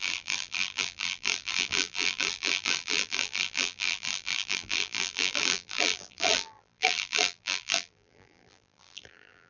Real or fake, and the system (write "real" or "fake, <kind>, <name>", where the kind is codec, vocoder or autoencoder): fake, vocoder, BigVGAN v2